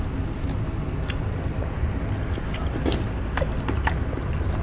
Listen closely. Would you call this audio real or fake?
real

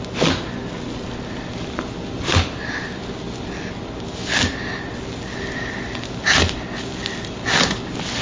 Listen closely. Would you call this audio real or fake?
real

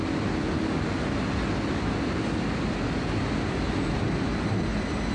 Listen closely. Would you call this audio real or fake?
real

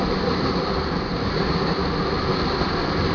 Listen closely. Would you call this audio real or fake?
real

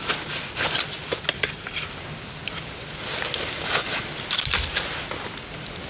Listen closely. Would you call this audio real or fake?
real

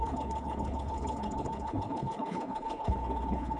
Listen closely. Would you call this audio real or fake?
fake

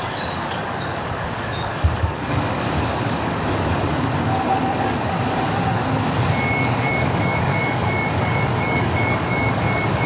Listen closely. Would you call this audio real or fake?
fake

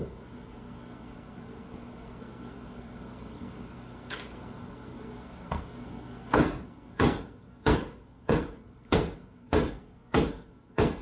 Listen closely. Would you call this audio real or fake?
fake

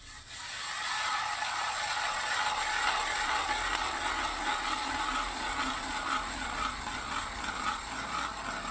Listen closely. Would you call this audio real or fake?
real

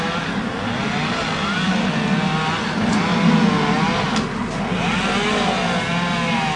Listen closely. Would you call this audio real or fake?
real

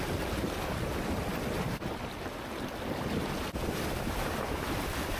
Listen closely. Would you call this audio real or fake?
real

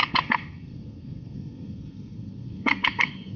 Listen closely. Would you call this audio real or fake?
fake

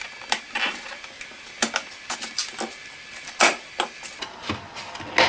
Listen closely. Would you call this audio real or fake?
real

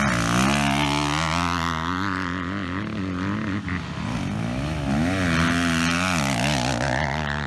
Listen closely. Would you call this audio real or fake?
real